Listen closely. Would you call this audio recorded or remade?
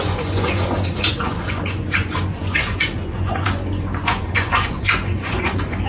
remade